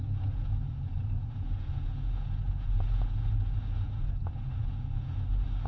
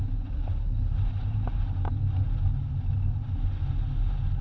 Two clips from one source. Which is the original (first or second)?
second